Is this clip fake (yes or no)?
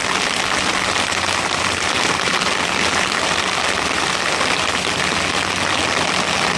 no